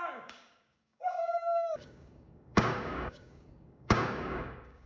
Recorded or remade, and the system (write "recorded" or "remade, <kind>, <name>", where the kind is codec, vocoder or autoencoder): remade, codec, DAC